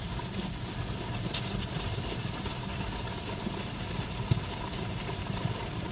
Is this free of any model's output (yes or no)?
no